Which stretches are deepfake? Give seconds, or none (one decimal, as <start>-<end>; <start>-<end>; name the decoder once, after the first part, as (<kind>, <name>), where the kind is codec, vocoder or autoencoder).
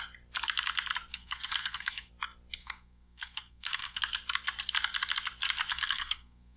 1.1-2.1 (codec, SNAC); 2.6-4.0; 5.7-6.6